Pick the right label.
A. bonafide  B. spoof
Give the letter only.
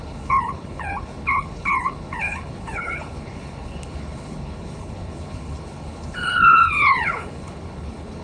B